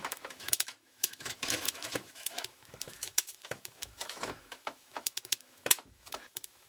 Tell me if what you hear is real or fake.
fake